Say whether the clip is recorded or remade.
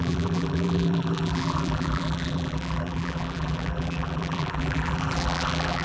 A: remade